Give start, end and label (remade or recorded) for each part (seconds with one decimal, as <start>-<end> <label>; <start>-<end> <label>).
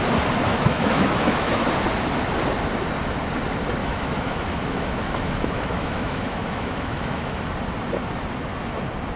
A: 0.0-0.5 recorded; 0.5-1.7 remade; 1.7-3.8 recorded; 3.8-7.4 remade; 7.4-9.2 recorded